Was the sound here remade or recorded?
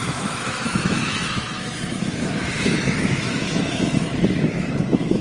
remade